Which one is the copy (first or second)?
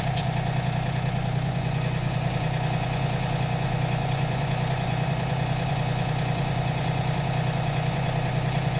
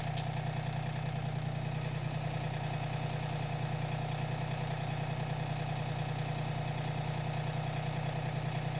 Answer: first